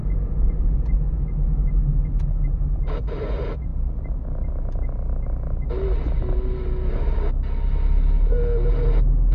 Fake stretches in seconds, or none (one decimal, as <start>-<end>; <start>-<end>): 0.0-1.8